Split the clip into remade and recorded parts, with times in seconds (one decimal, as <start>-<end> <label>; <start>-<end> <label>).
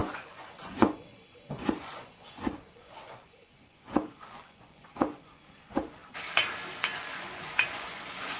0.0-6.0 remade; 6.0-6.7 recorded; 6.7-8.4 remade